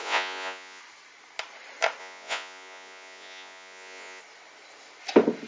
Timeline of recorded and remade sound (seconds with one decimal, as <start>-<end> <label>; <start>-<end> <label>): 0.0-0.8 remade; 0.8-2.0 recorded; 2.0-4.2 remade; 4.2-5.5 recorded